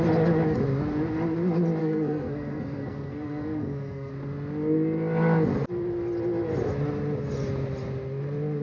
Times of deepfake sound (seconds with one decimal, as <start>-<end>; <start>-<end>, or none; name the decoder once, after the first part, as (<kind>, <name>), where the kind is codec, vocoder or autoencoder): 1.8-4.1 (codec, SNAC)

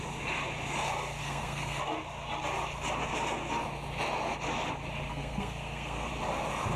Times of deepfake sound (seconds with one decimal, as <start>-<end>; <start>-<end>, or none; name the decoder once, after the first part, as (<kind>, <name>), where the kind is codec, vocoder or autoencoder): 1.2-1.8 (codec, SNAC); 5.1-6.1

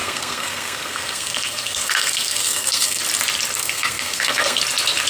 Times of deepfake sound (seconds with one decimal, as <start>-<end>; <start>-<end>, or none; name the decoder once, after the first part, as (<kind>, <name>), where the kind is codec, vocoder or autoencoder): 0.0-3.0 (codec, SNAC); 3.6-4.6